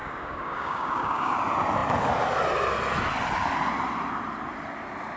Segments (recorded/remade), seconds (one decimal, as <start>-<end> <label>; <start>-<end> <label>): 0.0-1.4 remade; 1.4-5.2 recorded